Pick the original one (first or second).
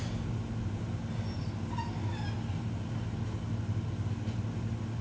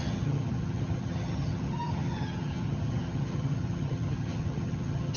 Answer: first